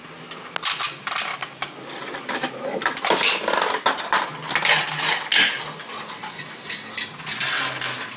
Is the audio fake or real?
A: real